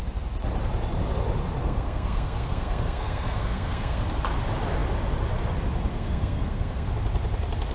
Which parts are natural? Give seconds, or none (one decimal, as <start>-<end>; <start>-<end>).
0.0-1.6; 4.0-5.9; 6.9-7.7